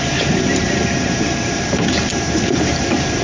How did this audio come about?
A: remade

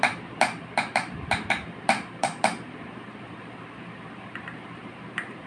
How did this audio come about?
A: remade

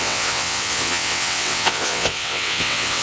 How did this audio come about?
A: remade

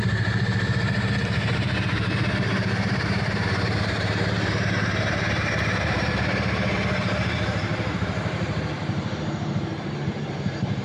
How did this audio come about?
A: remade